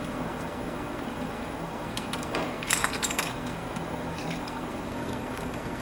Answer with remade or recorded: remade